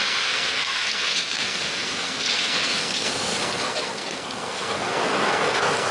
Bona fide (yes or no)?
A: no